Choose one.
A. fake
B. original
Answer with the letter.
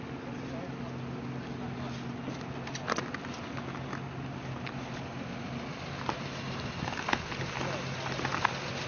B